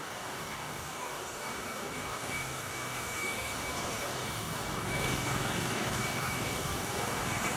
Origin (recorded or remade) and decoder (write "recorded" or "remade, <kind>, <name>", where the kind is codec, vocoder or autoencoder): remade, codec, DAC